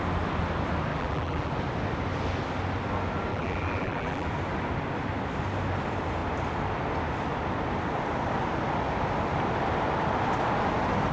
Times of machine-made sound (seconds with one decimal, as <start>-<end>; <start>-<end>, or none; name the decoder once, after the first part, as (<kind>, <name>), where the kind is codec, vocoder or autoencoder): 0.9-1.5 (vocoder, BigVGAN v2); 3.3-4.3